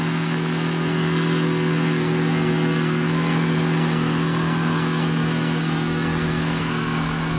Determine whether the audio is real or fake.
fake